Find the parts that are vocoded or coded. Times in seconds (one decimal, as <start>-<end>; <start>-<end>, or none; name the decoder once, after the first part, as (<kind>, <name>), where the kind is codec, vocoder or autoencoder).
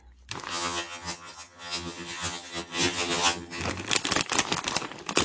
0.5-3.6 (vocoder, HiFi-GAN)